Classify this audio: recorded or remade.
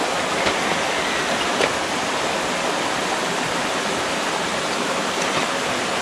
recorded